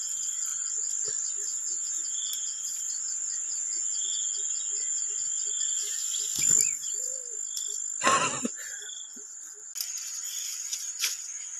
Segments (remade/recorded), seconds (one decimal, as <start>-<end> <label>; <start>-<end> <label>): 0.0-11.6 recorded